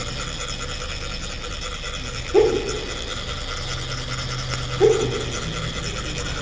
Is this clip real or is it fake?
real